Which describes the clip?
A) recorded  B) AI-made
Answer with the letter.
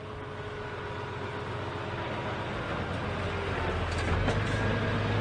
A